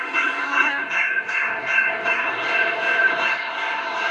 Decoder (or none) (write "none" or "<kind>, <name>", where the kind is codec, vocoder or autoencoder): codec, SNAC